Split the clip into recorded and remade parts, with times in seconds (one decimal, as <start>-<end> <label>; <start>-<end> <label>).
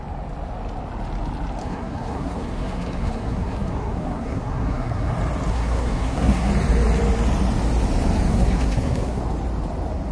0.0-1.6 recorded; 1.6-5.1 remade; 5.1-5.5 recorded; 5.5-6.5 remade; 6.5-8.3 recorded; 8.3-9.2 remade; 9.2-10.1 recorded